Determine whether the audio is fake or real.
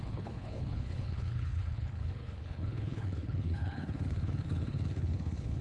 fake